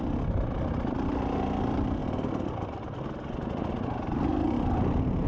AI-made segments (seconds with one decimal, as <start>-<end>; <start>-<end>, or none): 0.0-4.3